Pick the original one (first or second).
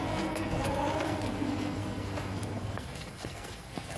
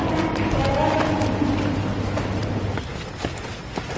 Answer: second